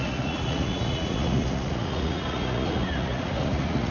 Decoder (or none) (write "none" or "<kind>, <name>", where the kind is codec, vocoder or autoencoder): vocoder, Vocos